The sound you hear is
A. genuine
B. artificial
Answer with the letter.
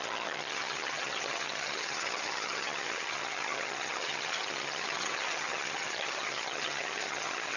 B